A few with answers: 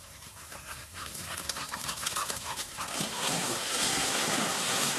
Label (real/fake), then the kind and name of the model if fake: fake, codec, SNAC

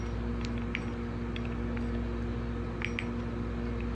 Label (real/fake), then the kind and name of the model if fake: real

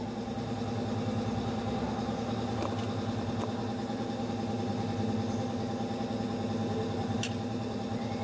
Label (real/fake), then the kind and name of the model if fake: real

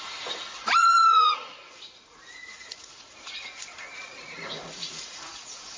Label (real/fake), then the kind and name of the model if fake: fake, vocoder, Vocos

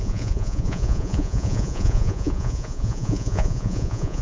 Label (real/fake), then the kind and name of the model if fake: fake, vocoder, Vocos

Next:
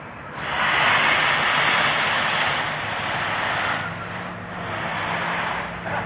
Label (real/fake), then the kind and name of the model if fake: real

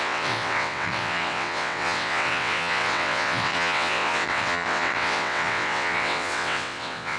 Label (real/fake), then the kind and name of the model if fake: fake, vocoder, WaveNeXt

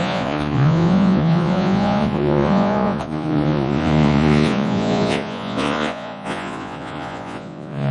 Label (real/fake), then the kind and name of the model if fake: fake, vocoder, Vocos